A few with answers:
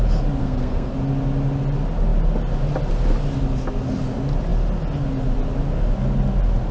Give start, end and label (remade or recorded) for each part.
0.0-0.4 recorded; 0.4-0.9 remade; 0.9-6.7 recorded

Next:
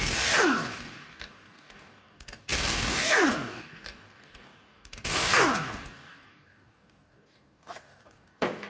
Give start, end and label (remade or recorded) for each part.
0.0-8.7 remade

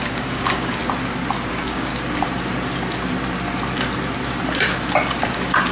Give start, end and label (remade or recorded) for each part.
0.0-0.8 remade; 0.8-1.5 recorded; 1.5-1.9 remade; 1.9-5.3 recorded; 5.3-5.7 remade

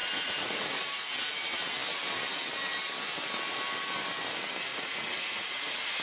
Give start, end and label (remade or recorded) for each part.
0.0-0.8 remade; 0.8-4.7 recorded; 4.7-6.0 remade

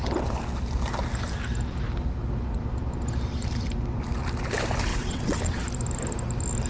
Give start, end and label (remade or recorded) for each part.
0.0-4.9 recorded; 4.9-5.6 remade; 5.6-6.7 recorded

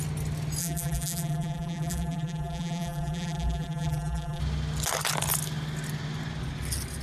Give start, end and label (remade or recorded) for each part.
0.0-0.6 recorded; 0.6-4.4 remade; 4.4-7.0 recorded

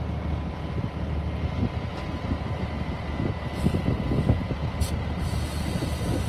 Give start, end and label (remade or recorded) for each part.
0.0-6.3 recorded